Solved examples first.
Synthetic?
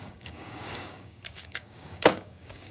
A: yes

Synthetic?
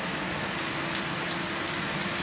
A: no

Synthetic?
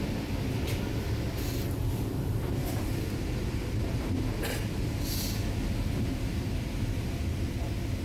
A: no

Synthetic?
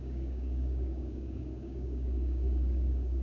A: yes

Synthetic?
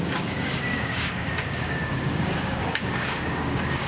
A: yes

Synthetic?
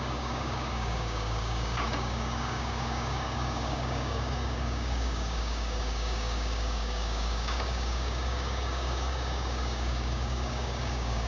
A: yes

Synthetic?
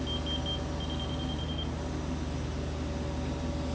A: no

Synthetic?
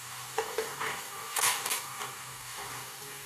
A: yes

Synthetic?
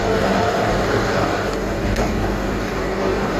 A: yes